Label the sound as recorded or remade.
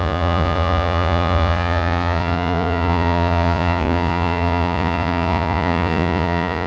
remade